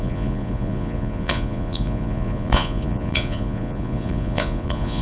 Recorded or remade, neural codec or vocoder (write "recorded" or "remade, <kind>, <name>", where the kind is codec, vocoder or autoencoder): remade, vocoder, Vocos